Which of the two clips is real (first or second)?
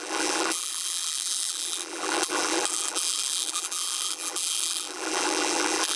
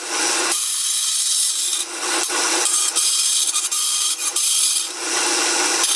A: second